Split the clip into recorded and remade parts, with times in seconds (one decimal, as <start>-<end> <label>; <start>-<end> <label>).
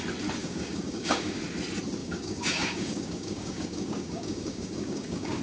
0.0-0.4 recorded; 0.4-1.4 remade; 1.4-2.0 recorded; 2.0-5.4 remade